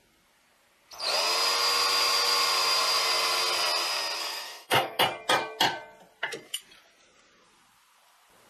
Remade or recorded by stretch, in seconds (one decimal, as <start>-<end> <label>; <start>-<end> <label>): 0.0-4.2 recorded; 4.2-5.0 remade; 5.0-8.5 recorded